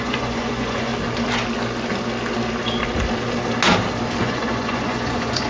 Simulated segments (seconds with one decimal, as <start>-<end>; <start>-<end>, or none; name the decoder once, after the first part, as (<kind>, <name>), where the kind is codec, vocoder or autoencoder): 0.0-0.9 (vocoder, Vocos); 4.2-5.5